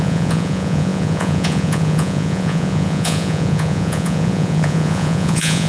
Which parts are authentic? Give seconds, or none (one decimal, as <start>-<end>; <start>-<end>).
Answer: none